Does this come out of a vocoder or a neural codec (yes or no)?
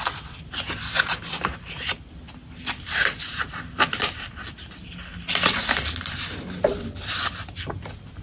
no